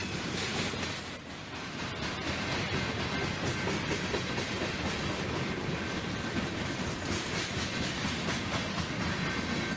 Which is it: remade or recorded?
recorded